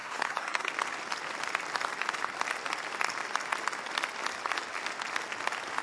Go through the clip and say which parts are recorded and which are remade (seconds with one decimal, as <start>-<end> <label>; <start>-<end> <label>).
0.0-0.7 remade; 0.7-5.8 recorded

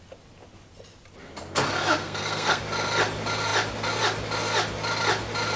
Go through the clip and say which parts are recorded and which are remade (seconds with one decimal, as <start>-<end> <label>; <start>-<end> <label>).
0.0-2.0 recorded; 2.0-2.6 remade; 2.6-5.6 recorded

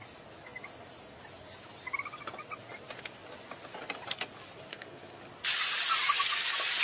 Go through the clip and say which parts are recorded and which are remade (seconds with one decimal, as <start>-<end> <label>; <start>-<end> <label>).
0.0-4.7 recorded; 4.7-5.2 remade; 5.2-6.8 recorded

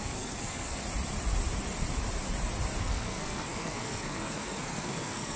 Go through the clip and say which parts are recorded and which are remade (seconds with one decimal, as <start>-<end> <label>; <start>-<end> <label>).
0.0-0.8 remade; 0.8-2.8 recorded; 2.8-5.4 remade

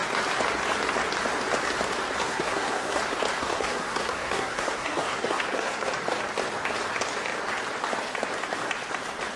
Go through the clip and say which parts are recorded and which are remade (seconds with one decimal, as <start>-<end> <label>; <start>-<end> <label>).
0.0-2.2 recorded; 2.2-3.0 remade; 3.0-3.4 recorded; 3.4-5.9 remade; 5.9-9.4 recorded

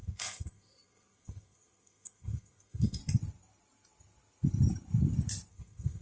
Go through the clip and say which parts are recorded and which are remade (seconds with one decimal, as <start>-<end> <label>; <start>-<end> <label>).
0.0-3.0 remade; 3.0-5.5 recorded; 5.5-6.0 remade